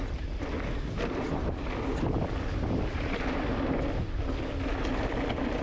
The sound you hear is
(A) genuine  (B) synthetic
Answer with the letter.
A